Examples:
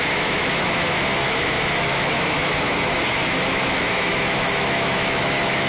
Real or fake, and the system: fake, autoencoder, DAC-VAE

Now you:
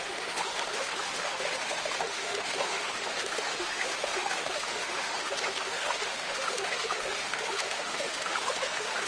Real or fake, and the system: fake, autoencoder, DAC-VAE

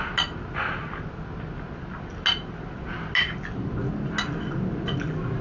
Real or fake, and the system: real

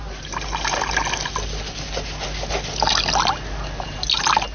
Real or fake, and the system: real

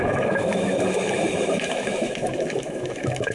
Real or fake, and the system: fake, autoencoder, DAC-VAE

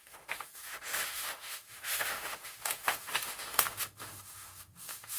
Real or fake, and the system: fake, autoencoder, DAC-VAE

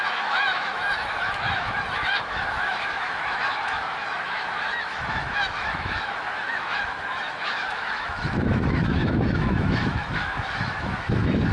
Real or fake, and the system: fake, autoencoder, DAC-VAE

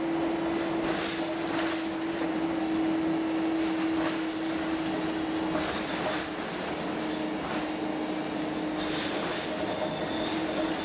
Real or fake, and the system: real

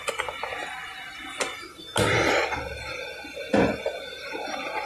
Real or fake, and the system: real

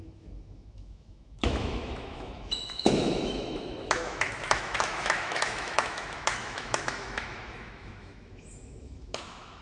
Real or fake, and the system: fake, autoencoder, DAC-VAE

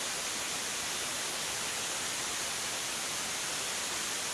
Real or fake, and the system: real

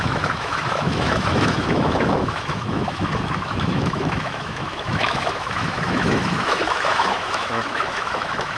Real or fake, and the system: fake, autoencoder, DAC-VAE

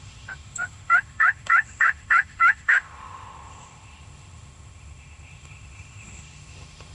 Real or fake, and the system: fake, autoencoder, DAC-VAE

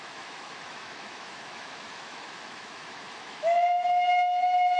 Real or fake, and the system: fake, autoencoder, DAC-VAE